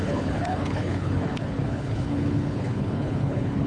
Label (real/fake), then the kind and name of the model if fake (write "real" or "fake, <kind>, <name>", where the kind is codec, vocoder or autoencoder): fake, codec, HILCodec